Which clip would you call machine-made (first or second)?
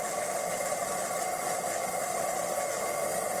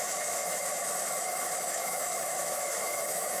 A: second